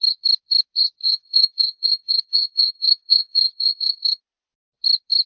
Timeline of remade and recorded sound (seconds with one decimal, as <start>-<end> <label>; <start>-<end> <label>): 0.0-1.0 recorded; 1.0-4.2 remade; 4.2-5.3 recorded